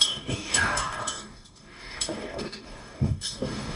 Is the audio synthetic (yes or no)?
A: yes